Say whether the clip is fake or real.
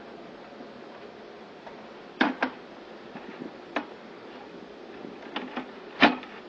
real